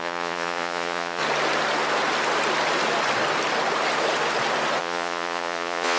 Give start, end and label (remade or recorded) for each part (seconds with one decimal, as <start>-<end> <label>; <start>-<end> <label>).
0.0-1.2 remade; 1.2-4.8 recorded; 4.8-6.0 remade